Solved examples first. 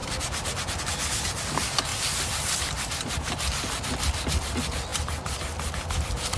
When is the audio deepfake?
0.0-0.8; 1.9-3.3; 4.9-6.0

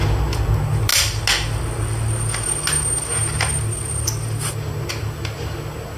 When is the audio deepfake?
none

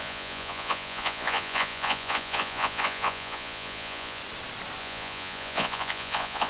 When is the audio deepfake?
0.0-4.2; 4.8-6.5

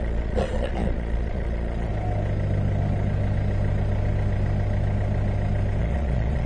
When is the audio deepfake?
0.0-1.9; 5.8-6.5

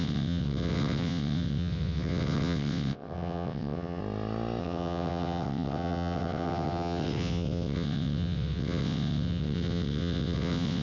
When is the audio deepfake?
0.0-4.0; 4.6-10.8

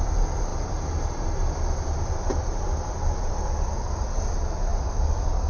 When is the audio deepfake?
none

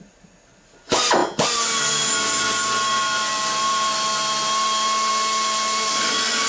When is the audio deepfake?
none

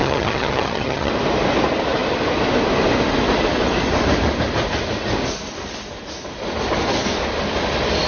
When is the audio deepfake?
0.0-1.1